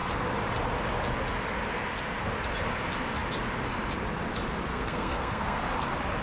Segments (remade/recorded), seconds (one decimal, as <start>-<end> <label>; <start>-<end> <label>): 0.0-4.7 recorded; 4.7-5.6 remade; 5.6-6.2 recorded